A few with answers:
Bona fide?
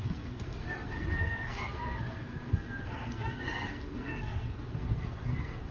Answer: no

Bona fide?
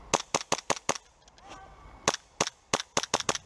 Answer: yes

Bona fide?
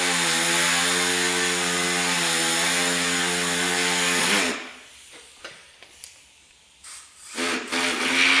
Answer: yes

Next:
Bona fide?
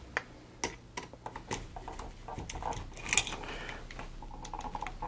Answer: yes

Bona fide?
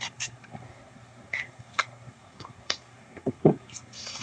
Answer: no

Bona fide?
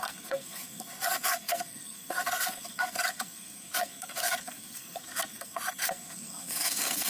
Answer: no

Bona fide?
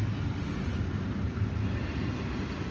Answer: yes